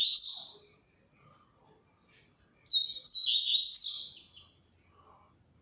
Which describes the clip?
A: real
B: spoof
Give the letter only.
A